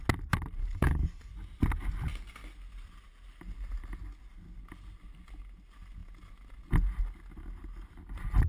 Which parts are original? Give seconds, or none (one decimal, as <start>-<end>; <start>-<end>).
0.0-0.6; 1.3-8.5